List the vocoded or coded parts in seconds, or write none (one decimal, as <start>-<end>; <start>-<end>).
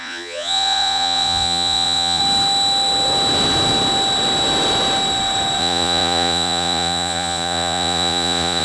0.0-2.2; 5.6-8.6